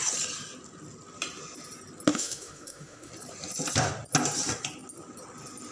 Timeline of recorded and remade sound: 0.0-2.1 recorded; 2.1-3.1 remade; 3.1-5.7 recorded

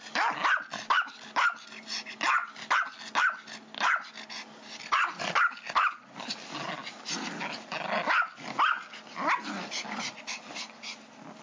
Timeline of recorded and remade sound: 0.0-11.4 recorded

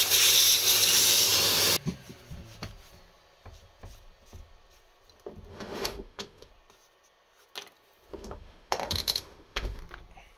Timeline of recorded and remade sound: 0.0-5.5 recorded; 5.5-6.5 remade; 6.5-8.1 recorded; 8.1-9.8 remade; 9.8-10.4 recorded